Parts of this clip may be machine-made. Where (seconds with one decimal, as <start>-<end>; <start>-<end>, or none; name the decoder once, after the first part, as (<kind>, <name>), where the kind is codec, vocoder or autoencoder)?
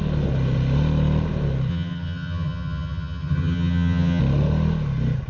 1.7-4.2 (vocoder, HiFi-GAN)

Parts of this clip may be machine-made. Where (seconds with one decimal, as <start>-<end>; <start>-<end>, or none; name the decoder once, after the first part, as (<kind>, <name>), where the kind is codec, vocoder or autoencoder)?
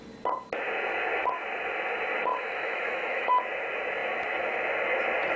2.3-3.4 (autoencoder, DAC-VAE)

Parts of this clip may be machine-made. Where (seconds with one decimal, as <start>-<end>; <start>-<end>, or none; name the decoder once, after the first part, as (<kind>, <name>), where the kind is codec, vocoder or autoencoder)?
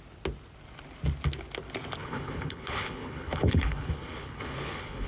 2.0-5.1 (codec, HILCodec)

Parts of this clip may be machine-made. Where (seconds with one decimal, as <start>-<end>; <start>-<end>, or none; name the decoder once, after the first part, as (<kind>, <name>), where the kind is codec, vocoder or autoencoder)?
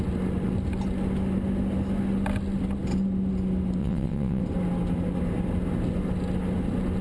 3.8-4.4 (vocoder, WaveNeXt)